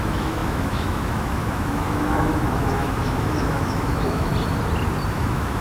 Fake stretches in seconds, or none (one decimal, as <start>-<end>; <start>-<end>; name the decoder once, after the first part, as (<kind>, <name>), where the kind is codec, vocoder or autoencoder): 0.0-4.3 (autoencoder, DAC-VAE); 5.1-5.6